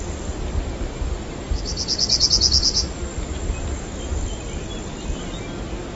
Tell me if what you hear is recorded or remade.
recorded